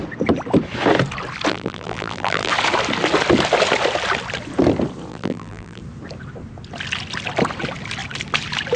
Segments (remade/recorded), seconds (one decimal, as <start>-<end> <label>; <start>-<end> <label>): 0.0-1.5 recorded; 1.5-2.5 remade; 2.5-5.1 recorded; 5.1-5.8 remade; 5.8-8.8 recorded